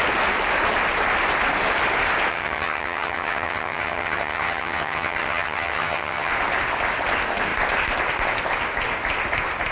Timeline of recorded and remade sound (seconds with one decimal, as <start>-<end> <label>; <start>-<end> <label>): 0.0-2.3 recorded; 2.3-6.3 remade; 6.3-9.7 recorded